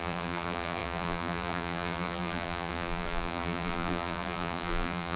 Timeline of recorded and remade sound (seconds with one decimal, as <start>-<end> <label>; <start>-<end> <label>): 0.0-5.2 remade